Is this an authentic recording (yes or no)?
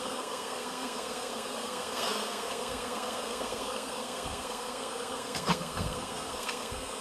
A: no